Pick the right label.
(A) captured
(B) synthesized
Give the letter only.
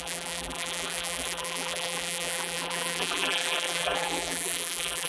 B